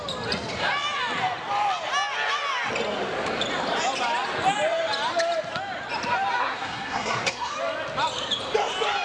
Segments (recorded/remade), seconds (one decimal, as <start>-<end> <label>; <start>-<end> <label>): 0.0-6.4 recorded; 6.4-7.5 remade; 7.5-9.0 recorded